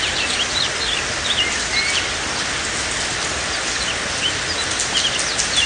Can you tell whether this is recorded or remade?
recorded